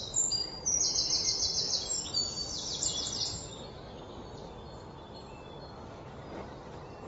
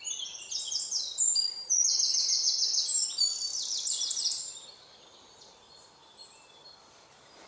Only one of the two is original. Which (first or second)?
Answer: first